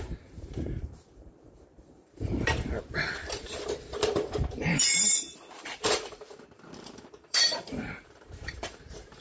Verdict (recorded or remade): remade